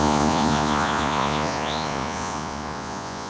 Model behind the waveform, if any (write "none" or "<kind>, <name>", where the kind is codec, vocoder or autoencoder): vocoder, Vocos